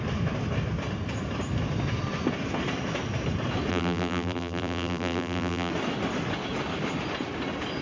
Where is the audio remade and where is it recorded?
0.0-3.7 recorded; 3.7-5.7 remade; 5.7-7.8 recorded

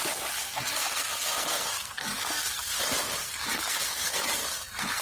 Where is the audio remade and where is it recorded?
0.0-0.4 recorded; 0.4-2.8 remade; 2.8-3.2 recorded; 3.2-5.0 remade

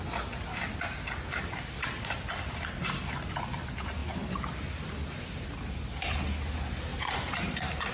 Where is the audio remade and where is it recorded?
0.0-6.9 recorded; 6.9-7.9 remade

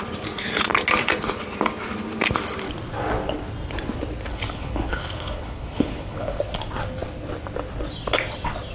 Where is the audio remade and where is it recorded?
0.0-4.3 recorded; 4.3-6.4 remade; 6.4-8.7 recorded